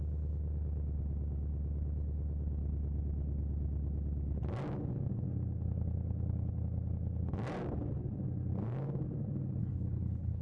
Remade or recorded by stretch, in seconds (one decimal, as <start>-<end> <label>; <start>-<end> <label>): 0.0-9.6 recorded; 9.6-10.4 remade